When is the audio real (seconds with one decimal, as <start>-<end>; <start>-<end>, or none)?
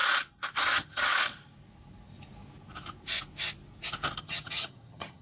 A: 0.0-0.6; 1.1-4.2